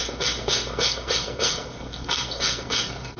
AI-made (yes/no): yes